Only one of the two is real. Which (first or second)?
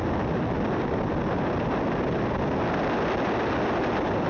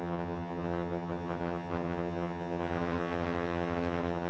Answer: first